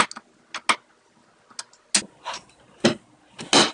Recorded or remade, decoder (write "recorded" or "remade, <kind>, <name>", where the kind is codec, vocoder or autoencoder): recorded